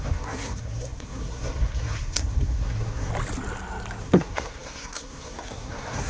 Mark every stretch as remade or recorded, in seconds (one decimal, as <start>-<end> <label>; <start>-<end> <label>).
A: 0.0-3.1 remade; 3.1-4.0 recorded; 4.0-6.1 remade